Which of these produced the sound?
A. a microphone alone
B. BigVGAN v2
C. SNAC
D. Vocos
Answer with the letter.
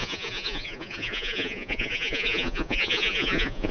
D